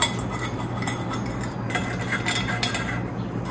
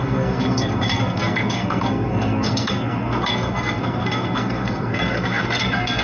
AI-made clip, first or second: second